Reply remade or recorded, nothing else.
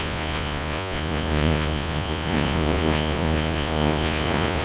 remade